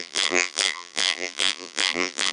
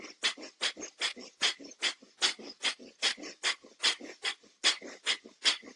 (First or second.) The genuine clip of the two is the second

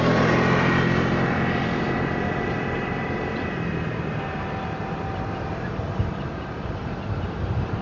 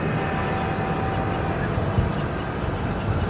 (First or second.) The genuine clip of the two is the second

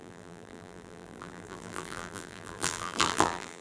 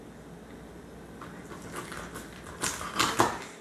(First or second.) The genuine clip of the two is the second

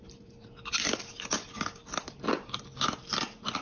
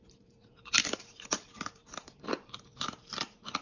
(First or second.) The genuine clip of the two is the first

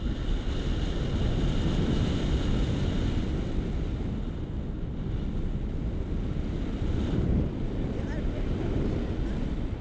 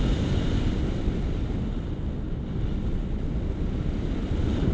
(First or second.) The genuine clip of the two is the first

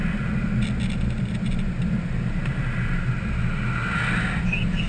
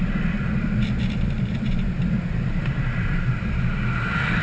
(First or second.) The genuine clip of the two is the first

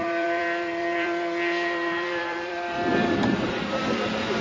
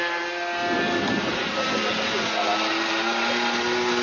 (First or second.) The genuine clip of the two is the second